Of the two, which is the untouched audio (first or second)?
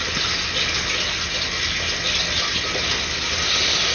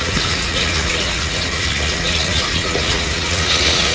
first